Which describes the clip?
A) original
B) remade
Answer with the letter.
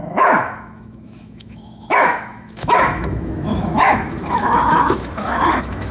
B